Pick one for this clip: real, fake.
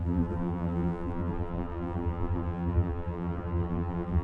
fake